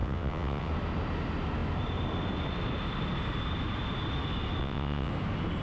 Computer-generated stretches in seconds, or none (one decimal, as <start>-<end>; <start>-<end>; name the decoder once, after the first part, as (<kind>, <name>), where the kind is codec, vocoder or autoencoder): 0.0-0.7 (vocoder, WaveNeXt); 4.6-5.1